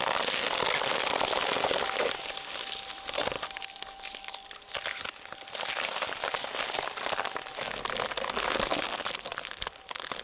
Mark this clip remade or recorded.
recorded